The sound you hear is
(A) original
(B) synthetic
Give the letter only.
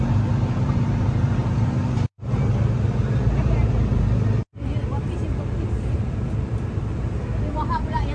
B